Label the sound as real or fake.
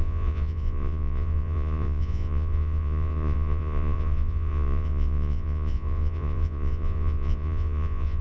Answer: fake